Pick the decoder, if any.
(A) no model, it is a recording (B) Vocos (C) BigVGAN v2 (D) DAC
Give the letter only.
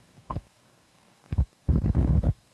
D